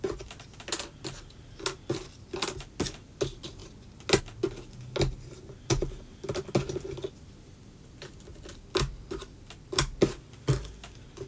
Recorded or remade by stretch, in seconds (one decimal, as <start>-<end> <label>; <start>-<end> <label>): 0.0-11.3 recorded